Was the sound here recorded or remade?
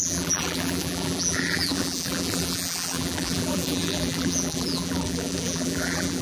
remade